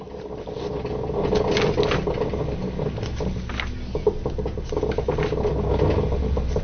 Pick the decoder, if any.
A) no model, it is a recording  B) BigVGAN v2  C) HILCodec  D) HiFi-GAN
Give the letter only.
A